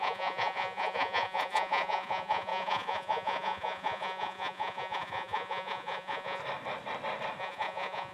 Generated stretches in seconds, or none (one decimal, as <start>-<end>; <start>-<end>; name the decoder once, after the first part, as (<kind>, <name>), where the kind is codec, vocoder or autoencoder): 0.0-6.4 (vocoder, Vocos); 7.4-8.1